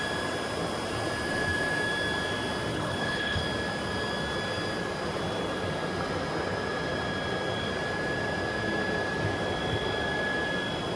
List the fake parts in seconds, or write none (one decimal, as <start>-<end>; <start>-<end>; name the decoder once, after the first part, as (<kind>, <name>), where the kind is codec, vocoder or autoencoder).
2.7-3.4 (codec, HILCodec)